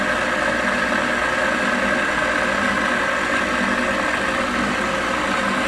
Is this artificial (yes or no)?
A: no